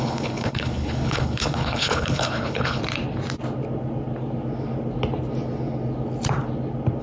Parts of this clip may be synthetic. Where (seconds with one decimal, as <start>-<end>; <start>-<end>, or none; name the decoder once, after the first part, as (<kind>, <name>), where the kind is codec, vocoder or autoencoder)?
0.0-2.8 (codec, HILCodec)